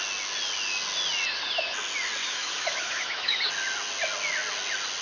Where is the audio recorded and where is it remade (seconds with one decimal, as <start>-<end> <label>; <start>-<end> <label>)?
0.0-2.2 recorded; 2.2-3.4 remade; 3.4-5.0 recorded